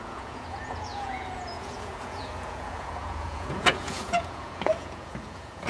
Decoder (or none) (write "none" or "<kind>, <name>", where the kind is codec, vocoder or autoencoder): vocoder, Vocos